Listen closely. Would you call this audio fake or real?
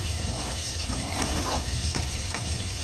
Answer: fake